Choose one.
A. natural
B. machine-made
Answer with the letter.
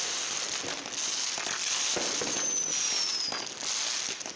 A